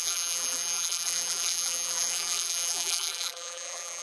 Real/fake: fake